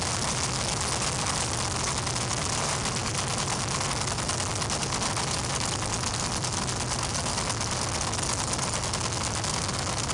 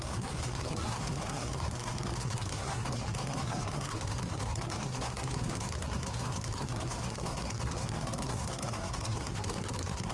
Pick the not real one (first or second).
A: second